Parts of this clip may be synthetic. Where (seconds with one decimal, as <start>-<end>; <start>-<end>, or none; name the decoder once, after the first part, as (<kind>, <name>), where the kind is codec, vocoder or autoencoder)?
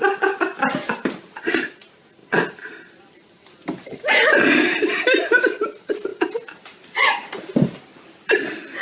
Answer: none